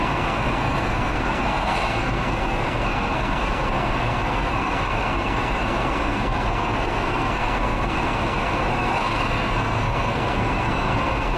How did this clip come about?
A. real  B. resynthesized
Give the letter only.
B